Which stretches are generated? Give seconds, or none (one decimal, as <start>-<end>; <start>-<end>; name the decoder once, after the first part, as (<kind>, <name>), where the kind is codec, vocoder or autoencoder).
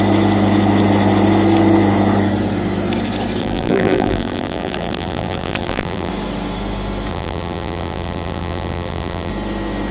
3.4-6.1 (vocoder, BigVGAN v2); 7.1-9.3